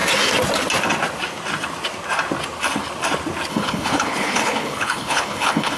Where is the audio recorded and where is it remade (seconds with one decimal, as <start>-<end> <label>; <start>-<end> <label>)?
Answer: 0.0-3.5 recorded; 3.5-5.8 remade